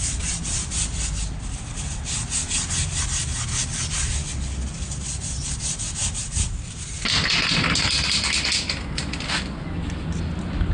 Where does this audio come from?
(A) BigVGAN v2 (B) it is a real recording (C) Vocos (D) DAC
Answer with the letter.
B